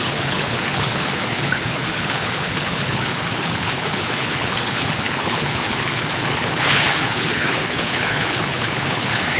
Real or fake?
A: fake